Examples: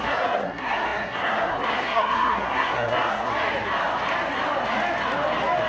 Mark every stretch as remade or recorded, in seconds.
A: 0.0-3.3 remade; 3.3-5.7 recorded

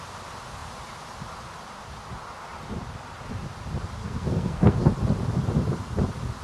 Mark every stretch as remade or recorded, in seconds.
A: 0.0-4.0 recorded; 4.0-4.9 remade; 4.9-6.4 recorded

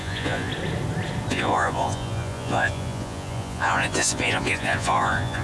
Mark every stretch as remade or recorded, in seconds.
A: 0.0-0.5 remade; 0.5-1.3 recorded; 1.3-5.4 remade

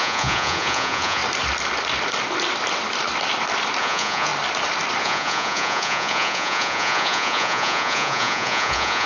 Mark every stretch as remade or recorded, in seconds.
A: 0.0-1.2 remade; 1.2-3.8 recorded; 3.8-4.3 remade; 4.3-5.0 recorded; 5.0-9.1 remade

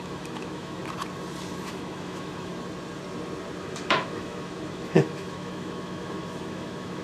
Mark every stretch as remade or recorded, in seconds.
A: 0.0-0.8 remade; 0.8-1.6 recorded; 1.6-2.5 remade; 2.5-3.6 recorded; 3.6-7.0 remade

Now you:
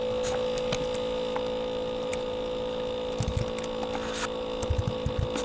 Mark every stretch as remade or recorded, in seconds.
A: 0.0-5.4 recorded

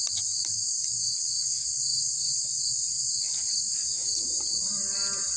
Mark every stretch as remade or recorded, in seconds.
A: 0.0-5.4 recorded

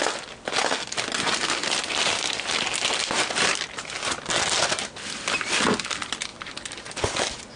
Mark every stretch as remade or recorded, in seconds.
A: 0.0-7.6 recorded